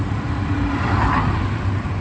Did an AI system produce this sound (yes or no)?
yes